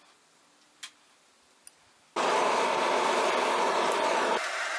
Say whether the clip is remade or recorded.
recorded